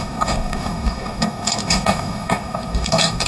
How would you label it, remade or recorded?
remade